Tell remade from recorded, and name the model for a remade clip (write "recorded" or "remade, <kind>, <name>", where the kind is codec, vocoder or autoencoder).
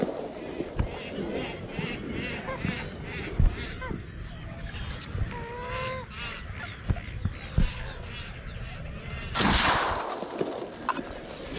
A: recorded